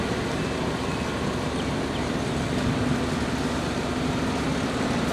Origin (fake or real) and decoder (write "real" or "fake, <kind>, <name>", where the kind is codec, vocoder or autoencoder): real